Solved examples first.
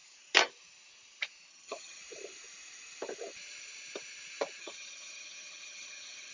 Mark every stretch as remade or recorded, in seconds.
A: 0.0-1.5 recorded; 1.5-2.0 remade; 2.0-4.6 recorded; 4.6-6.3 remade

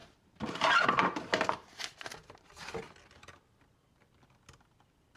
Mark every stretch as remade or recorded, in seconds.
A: 0.0-1.7 remade; 1.7-5.2 recorded

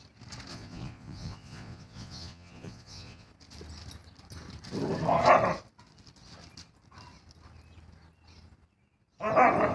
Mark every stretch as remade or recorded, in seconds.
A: 0.0-0.5 recorded; 0.5-3.3 remade; 3.3-9.7 recorded

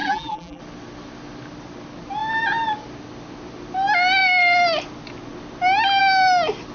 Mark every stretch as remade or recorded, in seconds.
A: 0.0-0.6 remade; 0.6-6.7 recorded

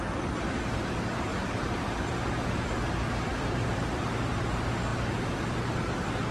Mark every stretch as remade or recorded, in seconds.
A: 0.0-1.3 recorded; 1.3-2.7 remade; 2.7-3.3 recorded; 3.3-4.4 remade; 4.4-6.3 recorded